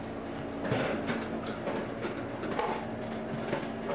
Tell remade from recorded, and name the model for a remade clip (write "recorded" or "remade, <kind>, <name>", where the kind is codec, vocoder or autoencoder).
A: recorded